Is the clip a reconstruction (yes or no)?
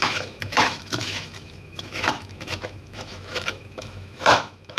yes